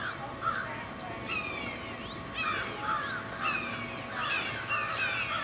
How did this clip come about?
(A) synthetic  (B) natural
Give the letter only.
B